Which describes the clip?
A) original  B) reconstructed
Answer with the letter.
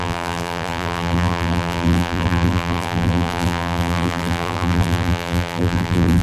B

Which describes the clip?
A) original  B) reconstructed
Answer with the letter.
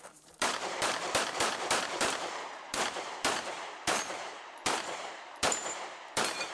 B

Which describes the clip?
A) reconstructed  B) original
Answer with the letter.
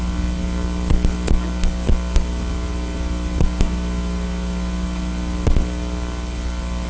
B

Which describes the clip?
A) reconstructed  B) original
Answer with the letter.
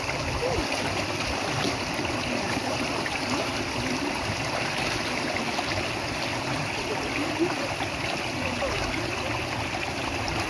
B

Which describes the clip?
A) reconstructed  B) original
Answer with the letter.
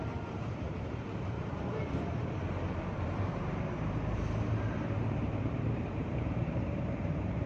A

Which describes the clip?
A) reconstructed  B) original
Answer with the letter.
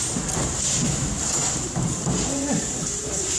A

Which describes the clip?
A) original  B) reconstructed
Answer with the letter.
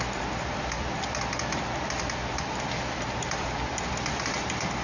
B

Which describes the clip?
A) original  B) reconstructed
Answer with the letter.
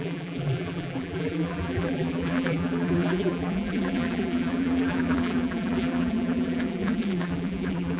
B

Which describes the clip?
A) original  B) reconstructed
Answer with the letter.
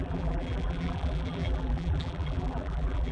B